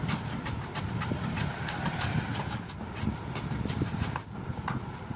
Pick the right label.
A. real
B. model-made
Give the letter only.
A